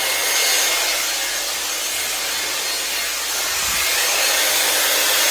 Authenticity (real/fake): real